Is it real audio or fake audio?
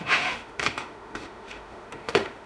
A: fake